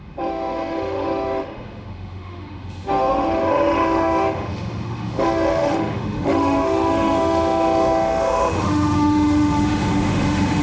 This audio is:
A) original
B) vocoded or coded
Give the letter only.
B